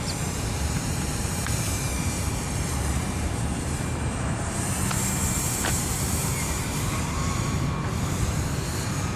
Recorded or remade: remade